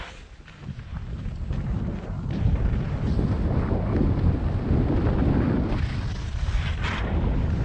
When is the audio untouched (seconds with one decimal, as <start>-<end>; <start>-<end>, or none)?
0.0-7.6